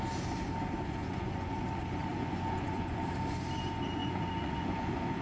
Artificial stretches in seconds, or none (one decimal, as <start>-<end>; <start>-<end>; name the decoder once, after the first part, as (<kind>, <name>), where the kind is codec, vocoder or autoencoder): 1.0-1.6 (vocoder, Vocos); 2.1-3.0; 4.0-5.2